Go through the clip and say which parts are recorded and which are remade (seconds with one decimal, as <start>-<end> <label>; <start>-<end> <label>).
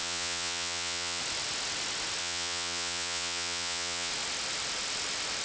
0.0-1.2 remade; 1.2-2.2 recorded; 2.2-4.1 remade; 4.1-5.4 recorded